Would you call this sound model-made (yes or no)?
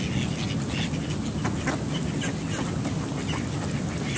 no